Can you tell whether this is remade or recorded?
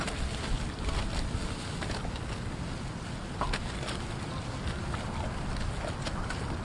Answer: recorded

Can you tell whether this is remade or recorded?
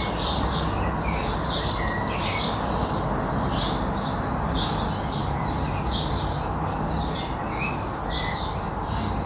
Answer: recorded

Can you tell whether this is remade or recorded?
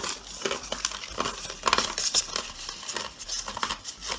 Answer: recorded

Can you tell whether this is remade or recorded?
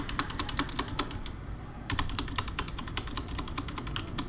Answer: recorded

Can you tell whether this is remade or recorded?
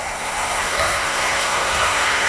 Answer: remade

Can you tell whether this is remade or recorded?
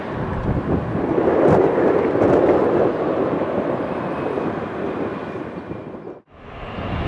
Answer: recorded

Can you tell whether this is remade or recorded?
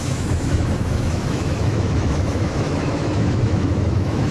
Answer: remade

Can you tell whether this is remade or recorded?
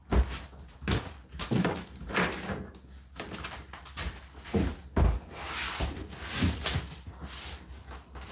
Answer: recorded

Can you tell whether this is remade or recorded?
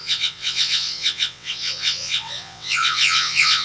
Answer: remade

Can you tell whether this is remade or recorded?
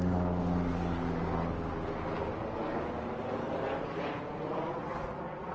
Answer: recorded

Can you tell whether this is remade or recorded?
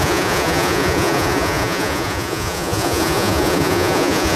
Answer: remade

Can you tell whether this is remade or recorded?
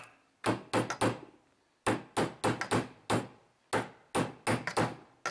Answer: recorded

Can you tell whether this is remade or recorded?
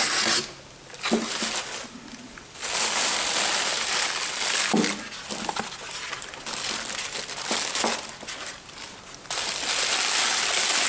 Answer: recorded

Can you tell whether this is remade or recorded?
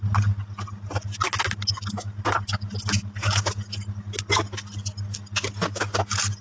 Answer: recorded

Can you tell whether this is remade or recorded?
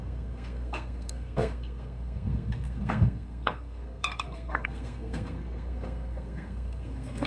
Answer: remade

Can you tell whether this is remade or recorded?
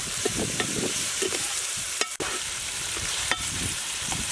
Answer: remade